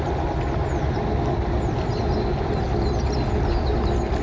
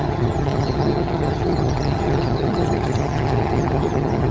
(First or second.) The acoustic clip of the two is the first